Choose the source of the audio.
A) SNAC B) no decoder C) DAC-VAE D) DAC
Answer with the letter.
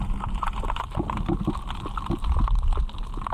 B